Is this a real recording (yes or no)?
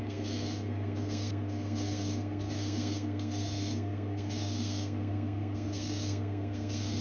no